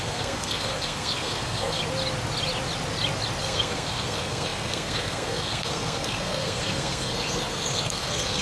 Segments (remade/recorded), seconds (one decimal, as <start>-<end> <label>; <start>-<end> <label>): 0.0-1.8 remade; 1.8-3.4 recorded; 3.4-8.4 remade